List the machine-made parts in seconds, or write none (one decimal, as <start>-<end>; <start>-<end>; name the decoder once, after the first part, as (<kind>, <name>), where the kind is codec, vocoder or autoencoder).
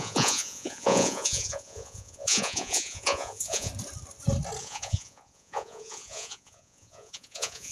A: 0.0-3.7 (vocoder, Vocos); 4.6-7.7